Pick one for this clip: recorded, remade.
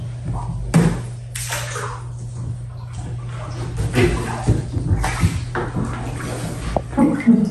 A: recorded